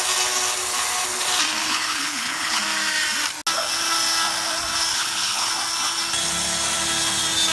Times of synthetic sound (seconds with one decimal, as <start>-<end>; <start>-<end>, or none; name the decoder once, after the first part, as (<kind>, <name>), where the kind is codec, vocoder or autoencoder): 1.6-2.6 (codec, HILCodec); 4.9-5.5